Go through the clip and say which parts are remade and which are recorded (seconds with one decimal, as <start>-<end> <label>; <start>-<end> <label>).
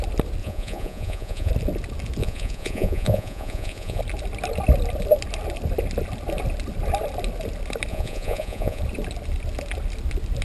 0.0-0.4 recorded; 0.4-1.5 remade; 1.5-2.2 recorded; 2.2-4.0 remade; 4.0-7.9 recorded; 7.9-8.8 remade; 8.8-10.4 recorded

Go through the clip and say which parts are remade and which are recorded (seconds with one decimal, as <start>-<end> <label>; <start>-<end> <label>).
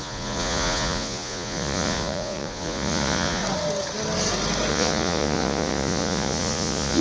0.0-3.4 remade; 3.4-4.7 recorded; 4.7-7.0 remade